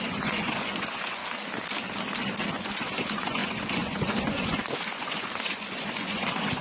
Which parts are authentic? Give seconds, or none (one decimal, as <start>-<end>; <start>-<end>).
1.2-2.5